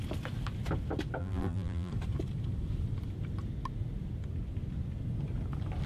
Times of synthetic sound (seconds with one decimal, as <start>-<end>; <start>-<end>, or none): 1.2-1.9

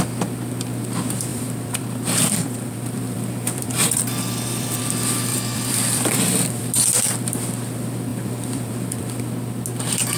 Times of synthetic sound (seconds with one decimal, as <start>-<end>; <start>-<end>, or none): 1.3-4.8; 5.3-6.6; 8.1-9.2

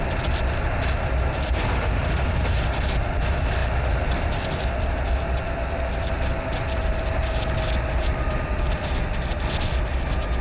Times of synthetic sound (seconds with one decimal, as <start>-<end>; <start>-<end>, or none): none

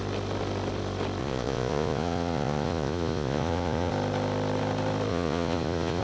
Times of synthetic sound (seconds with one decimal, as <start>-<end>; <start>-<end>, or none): 1.2-3.9; 5.1-6.0

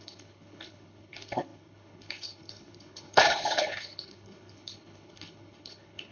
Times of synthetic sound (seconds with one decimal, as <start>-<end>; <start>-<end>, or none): 0.0-6.1

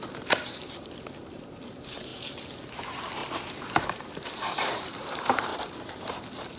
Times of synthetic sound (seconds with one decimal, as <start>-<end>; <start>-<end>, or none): 0.0-2.1; 2.7-3.2; 3.8-5.5

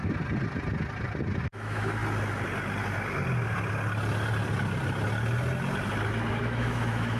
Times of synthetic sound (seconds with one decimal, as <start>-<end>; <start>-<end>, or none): 1.4-2.0; 6.3-7.2